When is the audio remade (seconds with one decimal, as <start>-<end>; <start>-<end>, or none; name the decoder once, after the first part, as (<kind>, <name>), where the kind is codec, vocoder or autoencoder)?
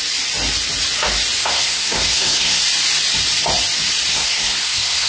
1.4-2.6 (codec, SNAC); 4.1-5.1